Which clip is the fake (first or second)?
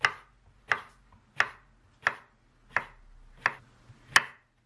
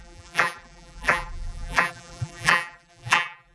second